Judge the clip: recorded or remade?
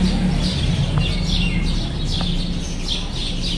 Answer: recorded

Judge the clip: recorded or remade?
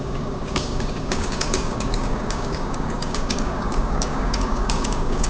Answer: remade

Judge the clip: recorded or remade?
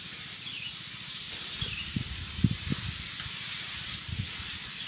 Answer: remade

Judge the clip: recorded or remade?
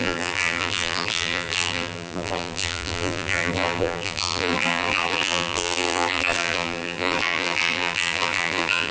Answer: remade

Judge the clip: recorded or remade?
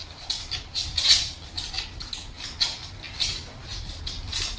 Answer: recorded